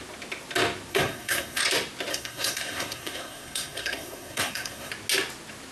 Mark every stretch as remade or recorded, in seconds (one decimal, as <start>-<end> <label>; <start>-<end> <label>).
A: 0.0-0.9 recorded; 0.9-1.6 remade; 1.6-2.1 recorded; 2.1-4.9 remade; 4.9-5.7 recorded